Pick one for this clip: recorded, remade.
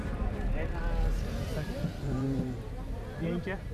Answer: remade